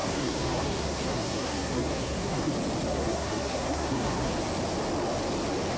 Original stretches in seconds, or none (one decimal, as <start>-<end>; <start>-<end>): 2.5-2.9; 4.3-5.8